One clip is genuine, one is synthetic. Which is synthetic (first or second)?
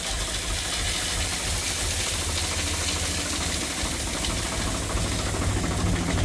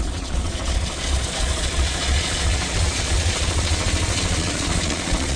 second